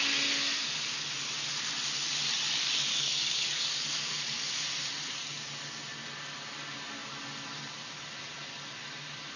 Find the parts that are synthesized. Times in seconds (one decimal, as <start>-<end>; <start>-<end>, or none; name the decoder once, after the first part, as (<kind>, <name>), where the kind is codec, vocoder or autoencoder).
2.9-4.6 (codec, DAC)

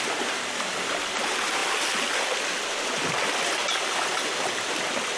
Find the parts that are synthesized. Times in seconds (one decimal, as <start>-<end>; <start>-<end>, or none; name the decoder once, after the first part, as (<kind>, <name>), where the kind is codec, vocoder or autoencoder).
none